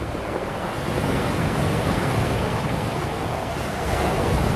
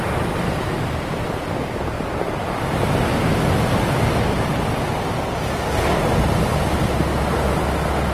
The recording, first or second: second